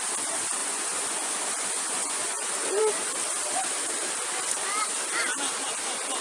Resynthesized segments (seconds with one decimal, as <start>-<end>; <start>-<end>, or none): 0.6-2.8